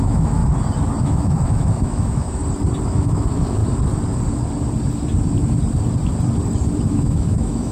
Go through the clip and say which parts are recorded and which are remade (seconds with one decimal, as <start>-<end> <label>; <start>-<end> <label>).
0.0-0.4 remade; 0.4-1.0 recorded; 1.0-2.4 remade; 2.4-2.9 recorded; 2.9-3.6 remade; 3.6-6.9 recorded; 6.9-7.7 remade